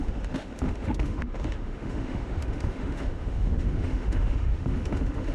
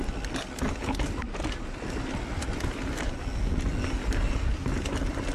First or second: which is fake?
first